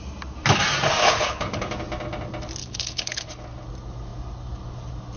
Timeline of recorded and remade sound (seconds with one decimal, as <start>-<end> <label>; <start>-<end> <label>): 0.0-1.0 recorded; 1.0-1.7 remade; 1.7-2.6 recorded; 2.6-3.3 remade; 3.3-5.2 recorded